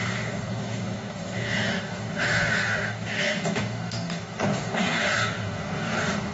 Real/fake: fake